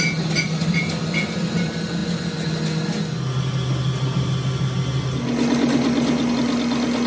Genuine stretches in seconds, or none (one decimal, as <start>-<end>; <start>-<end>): 0.0-7.1